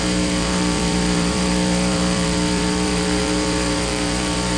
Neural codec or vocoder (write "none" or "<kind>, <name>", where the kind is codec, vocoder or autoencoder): vocoder, BigVGAN v2